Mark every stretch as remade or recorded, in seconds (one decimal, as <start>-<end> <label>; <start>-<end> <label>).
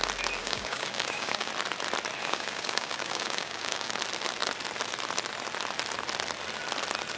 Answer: 0.0-0.4 recorded; 0.4-1.5 remade; 1.5-2.2 recorded; 2.2-3.9 remade; 3.9-7.2 recorded